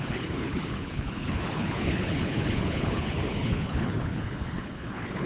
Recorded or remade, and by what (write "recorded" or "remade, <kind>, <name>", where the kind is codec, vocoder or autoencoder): remade, codec, HILCodec